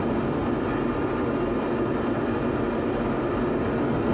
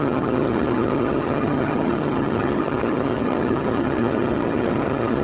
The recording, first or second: first